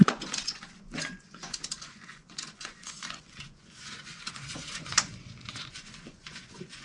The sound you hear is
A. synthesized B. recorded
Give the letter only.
A